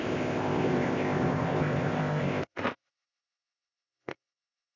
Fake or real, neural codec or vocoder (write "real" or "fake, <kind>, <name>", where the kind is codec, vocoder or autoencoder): fake, codec, ZipCodec